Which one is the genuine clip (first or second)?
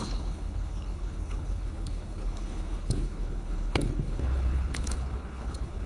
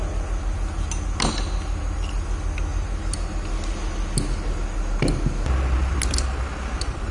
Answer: second